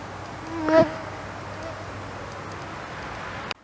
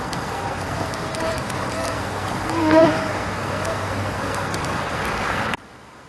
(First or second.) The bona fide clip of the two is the first